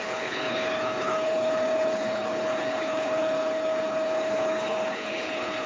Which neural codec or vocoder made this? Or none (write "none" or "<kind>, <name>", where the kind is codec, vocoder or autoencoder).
codec, HILCodec